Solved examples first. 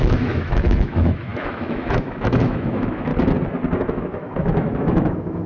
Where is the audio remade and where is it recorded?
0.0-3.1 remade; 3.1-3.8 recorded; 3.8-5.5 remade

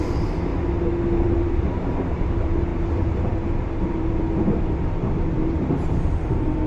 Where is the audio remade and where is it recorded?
0.0-0.5 remade; 0.5-1.4 recorded; 1.4-6.7 remade

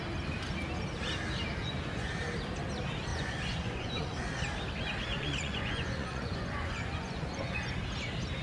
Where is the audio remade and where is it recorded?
0.0-1.6 recorded; 1.6-2.1 remade; 2.1-3.1 recorded; 3.1-4.2 remade; 4.2-5.1 recorded; 5.1-7.8 remade; 7.8-8.4 recorded